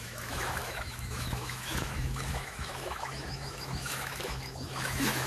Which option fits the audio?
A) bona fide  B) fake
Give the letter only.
B